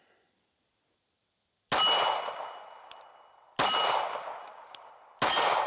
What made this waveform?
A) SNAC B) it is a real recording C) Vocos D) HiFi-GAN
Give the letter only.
B